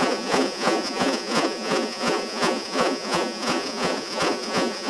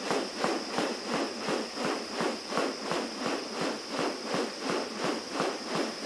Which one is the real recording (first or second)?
second